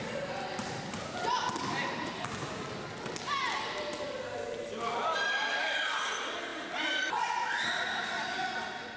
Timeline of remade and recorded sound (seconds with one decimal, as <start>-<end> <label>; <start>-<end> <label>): 0.0-9.0 recorded